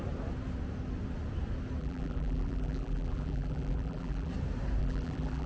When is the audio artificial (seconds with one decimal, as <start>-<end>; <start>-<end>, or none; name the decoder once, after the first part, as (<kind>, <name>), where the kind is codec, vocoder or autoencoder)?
1.8-4.3 (vocoder, BigVGAN v2); 4.8-5.5